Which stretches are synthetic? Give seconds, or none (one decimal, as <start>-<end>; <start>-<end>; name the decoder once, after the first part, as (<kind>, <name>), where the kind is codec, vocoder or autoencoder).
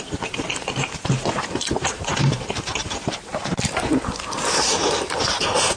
2.1-5.2 (vocoder, BigVGAN v2)